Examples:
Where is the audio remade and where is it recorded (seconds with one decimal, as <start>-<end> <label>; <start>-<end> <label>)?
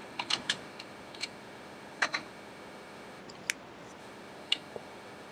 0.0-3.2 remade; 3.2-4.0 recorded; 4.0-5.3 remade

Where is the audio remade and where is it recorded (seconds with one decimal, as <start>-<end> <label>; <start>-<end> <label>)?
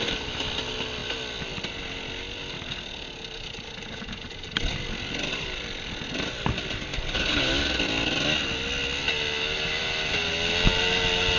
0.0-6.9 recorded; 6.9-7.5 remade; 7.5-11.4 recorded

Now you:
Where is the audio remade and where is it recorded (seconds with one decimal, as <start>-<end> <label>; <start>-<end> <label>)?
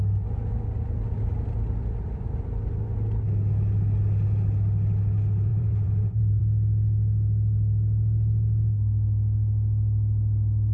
0.0-5.5 recorded; 5.5-6.4 remade; 6.4-10.7 recorded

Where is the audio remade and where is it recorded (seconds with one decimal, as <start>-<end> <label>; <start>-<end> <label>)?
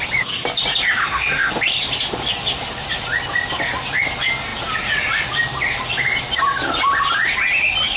0.0-1.0 recorded; 1.0-1.5 remade; 1.5-8.0 recorded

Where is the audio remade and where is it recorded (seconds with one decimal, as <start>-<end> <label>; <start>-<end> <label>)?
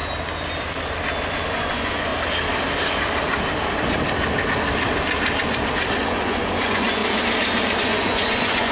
0.0-1.5 recorded; 1.5-2.1 remade; 2.1-6.0 recorded; 6.0-7.0 remade; 7.0-7.8 recorded; 7.8-8.7 remade